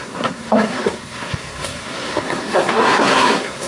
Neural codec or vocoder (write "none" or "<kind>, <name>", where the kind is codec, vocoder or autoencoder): codec, SNAC